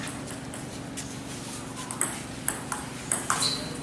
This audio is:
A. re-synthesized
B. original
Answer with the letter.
B